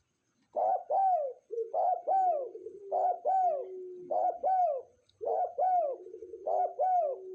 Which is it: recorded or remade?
recorded